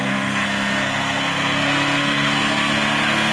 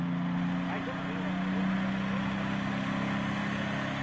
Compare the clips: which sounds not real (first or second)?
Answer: first